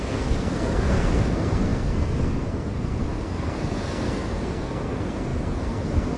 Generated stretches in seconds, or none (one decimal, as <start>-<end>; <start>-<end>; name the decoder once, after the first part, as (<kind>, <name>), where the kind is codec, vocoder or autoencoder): 0.0-6.2 (codec, SNAC)